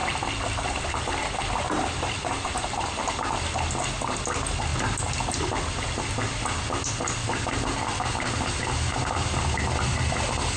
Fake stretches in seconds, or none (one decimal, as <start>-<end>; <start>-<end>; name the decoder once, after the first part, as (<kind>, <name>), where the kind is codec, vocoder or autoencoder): none